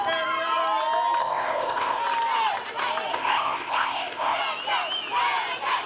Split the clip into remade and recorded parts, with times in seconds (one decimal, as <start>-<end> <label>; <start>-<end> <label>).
0.0-1.2 recorded; 1.2-2.0 remade; 2.0-3.1 recorded; 3.1-4.4 remade; 4.4-5.9 recorded